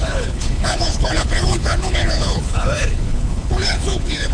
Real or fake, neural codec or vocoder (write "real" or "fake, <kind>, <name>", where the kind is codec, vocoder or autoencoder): fake, codec, HILCodec